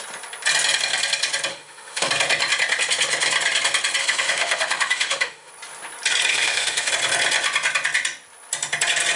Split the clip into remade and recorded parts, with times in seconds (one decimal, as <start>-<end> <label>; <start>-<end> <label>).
0.0-1.5 recorded; 1.5-2.1 remade; 2.1-4.0 recorded; 4.0-5.5 remade; 5.5-6.3 recorded; 6.3-6.9 remade; 6.9-9.2 recorded